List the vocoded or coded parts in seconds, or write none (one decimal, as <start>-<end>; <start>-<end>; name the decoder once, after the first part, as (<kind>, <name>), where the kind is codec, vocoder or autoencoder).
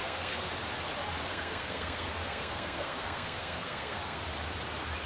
0.0-0.5 (codec, SNAC); 1.3-4.2